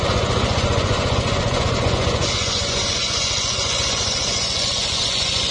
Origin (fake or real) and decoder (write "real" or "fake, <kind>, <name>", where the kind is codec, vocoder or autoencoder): fake, vocoder, Vocos